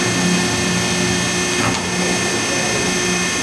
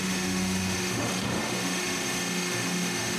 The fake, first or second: second